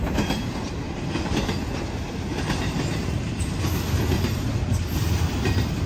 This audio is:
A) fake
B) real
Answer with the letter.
B